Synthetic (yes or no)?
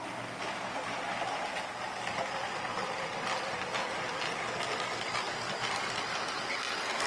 no